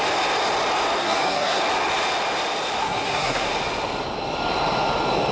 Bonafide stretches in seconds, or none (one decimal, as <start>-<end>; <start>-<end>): 0.0-1.0; 1.6-2.8; 3.5-5.3